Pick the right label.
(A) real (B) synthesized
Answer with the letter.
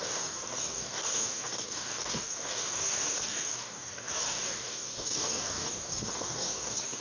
B